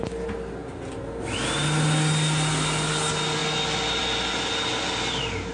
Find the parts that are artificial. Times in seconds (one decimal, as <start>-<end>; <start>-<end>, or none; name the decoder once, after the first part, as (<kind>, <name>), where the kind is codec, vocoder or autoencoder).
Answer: none

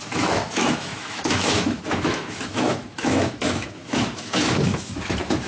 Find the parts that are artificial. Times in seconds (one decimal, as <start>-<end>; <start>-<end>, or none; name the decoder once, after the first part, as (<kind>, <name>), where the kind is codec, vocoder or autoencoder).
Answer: 0.0-5.5 (autoencoder, DAC-VAE)

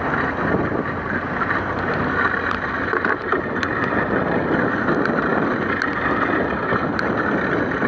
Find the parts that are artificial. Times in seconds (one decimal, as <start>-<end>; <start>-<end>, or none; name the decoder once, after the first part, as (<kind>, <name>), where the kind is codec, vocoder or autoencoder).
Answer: none